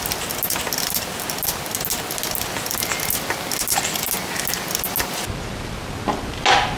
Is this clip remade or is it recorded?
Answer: recorded